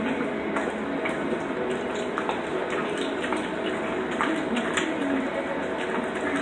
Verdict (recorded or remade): recorded